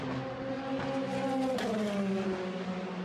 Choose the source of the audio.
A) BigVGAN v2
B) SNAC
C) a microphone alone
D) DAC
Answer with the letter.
C